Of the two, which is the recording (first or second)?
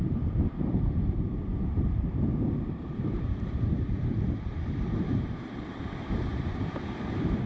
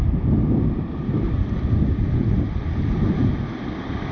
second